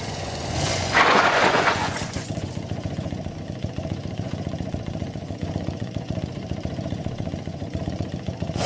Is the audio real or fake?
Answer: fake